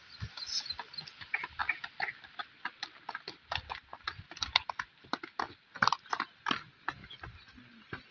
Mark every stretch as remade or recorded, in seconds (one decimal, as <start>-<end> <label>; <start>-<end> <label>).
0.0-8.1 recorded